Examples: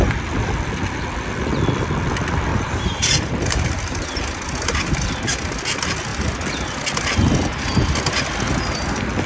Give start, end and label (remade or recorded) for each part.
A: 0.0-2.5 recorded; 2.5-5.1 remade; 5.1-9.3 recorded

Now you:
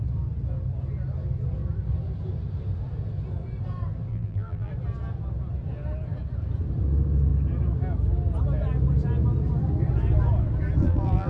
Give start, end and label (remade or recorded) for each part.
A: 0.0-4.1 recorded; 4.1-4.7 remade; 4.7-10.8 recorded; 10.8-11.3 remade

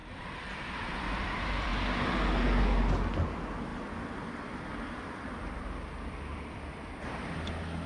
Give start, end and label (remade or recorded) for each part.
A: 0.0-1.7 remade; 1.7-3.7 recorded; 3.7-7.5 remade; 7.5-7.9 recorded

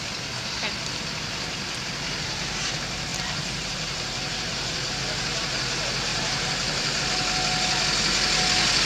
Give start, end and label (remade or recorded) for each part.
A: 0.0-3.1 recorded; 3.1-5.0 remade; 5.0-6.1 recorded; 6.1-7.0 remade; 7.0-8.9 recorded

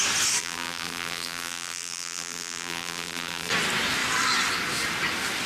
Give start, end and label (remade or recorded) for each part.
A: 0.0-0.4 recorded; 0.4-3.5 remade; 3.5-5.5 recorded

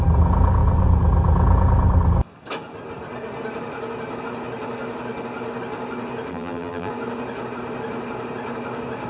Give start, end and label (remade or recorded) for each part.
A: 0.0-6.3 recorded; 6.3-6.9 remade; 6.9-9.1 recorded

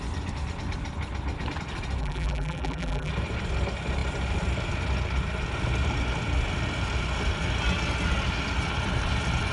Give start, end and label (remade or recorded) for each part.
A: 0.0-2.0 recorded; 2.0-3.1 remade; 3.1-9.5 recorded